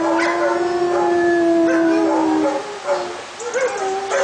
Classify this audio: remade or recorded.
recorded